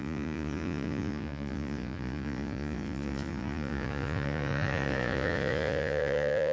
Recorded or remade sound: remade